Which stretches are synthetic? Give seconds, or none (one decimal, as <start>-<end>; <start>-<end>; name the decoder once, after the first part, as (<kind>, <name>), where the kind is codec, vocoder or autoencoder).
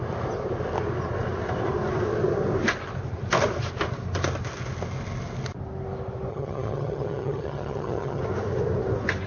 6.3-8.2 (vocoder, HiFi-GAN)